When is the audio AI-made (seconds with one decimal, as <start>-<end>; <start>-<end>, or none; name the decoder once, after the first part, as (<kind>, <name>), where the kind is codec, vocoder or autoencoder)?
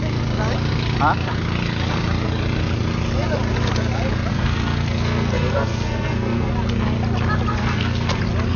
4.3-6.5 (codec, SNAC); 7.5-8.2